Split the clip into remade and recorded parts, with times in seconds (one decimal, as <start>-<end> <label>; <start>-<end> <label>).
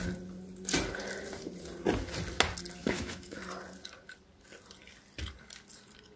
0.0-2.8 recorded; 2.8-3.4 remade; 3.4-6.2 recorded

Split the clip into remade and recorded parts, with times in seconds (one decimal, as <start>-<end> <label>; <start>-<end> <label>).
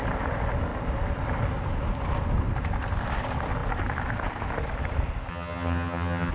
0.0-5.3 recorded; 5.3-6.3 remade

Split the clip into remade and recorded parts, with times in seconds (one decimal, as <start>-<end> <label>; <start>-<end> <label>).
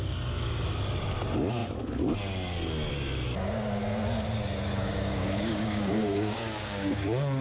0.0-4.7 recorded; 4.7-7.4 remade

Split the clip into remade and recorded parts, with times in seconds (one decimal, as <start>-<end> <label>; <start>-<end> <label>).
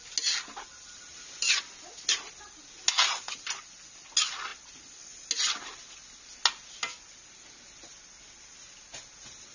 0.0-9.5 recorded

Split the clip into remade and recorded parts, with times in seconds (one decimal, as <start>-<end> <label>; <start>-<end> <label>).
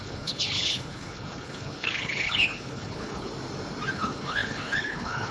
0.0-3.3 remade; 3.3-3.9 recorded; 3.9-5.3 remade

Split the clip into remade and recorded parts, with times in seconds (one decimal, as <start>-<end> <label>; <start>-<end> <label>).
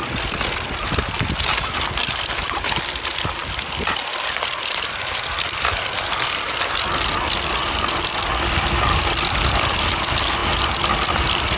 0.0-11.6 recorded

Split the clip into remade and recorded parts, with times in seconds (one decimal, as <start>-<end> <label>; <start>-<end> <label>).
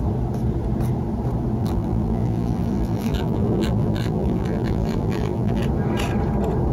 0.0-1.6 recorded; 1.6-5.6 remade; 5.6-6.7 recorded